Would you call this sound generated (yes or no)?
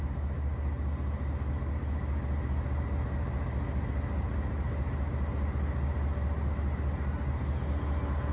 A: no